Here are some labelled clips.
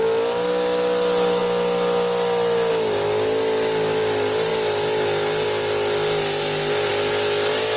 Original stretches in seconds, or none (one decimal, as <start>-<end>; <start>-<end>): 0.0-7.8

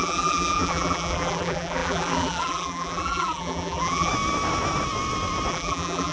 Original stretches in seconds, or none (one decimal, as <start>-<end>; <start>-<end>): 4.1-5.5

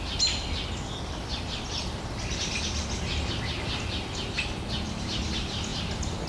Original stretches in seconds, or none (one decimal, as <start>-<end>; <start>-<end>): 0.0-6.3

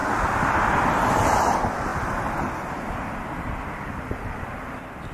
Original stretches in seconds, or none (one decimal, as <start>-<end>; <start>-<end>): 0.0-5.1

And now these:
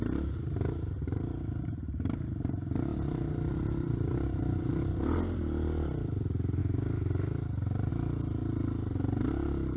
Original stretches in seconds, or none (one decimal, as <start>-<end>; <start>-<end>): 6.6-7.9; 8.4-9.3

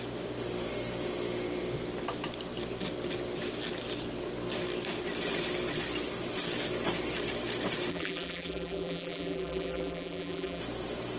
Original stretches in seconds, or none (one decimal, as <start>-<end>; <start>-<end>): 0.0-7.9; 10.6-11.2

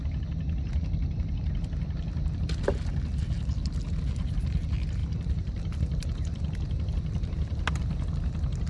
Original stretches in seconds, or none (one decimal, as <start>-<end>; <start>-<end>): 0.0-5.0; 7.8-8.7